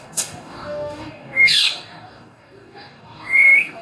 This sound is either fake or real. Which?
fake